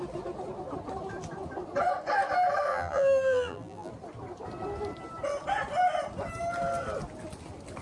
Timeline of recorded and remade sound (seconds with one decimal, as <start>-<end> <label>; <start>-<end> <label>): 0.0-2.7 recorded; 2.7-3.9 remade; 3.9-7.8 recorded